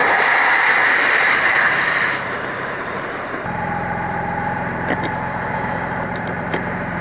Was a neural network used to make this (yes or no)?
yes